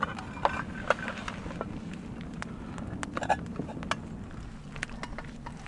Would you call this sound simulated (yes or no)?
no